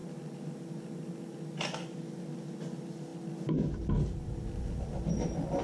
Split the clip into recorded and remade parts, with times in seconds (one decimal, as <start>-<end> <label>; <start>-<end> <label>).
0.0-5.6 recorded